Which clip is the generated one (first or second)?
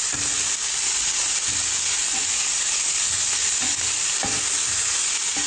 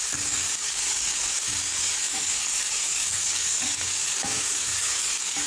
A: second